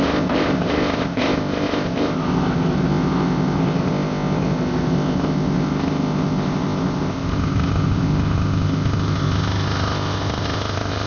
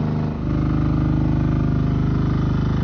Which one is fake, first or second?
first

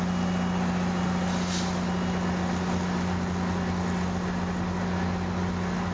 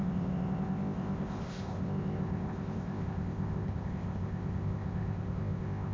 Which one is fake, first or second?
second